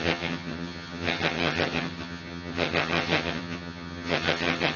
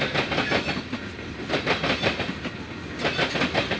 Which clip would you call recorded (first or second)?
second